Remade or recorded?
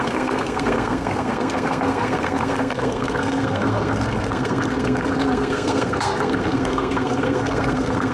remade